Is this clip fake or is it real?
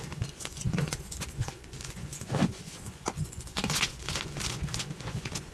fake